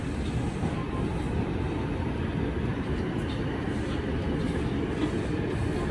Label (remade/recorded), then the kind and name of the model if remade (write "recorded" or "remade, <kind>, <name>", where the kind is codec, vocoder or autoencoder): recorded